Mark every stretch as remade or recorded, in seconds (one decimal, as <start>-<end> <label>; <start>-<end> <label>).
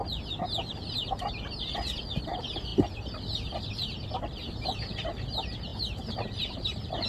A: 0.0-2.2 recorded; 2.2-2.7 remade; 2.7-3.7 recorded; 3.7-7.1 remade